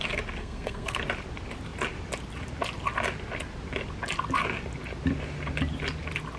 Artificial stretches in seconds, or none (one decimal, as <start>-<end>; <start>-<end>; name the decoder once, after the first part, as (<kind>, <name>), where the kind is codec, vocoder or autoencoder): 0.4-1.0 (codec, SNAC)